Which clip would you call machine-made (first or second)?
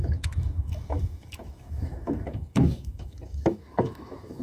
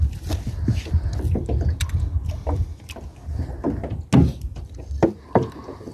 first